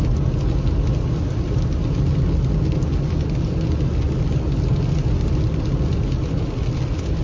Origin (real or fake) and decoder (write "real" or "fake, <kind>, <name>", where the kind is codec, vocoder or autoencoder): real